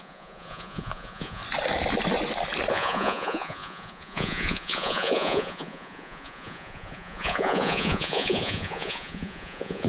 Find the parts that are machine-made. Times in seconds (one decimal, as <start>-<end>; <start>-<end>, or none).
0.0-1.4; 2.7-9.9